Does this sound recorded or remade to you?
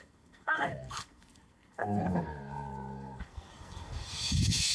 remade